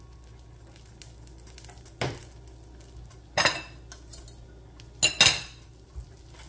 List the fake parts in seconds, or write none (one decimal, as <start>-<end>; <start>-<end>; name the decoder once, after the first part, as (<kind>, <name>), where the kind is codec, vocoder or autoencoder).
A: none